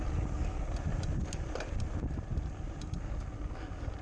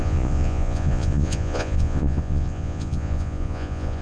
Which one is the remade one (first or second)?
second